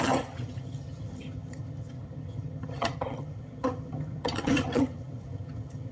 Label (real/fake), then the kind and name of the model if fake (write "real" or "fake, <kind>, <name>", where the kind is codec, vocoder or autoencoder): fake, vocoder, HiFi-GAN